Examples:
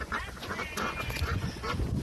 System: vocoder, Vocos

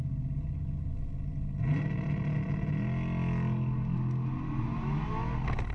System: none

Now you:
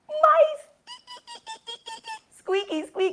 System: none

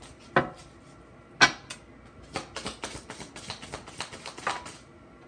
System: none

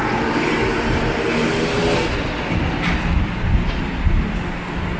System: none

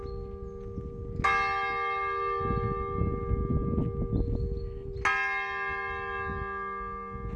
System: none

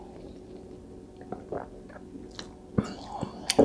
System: none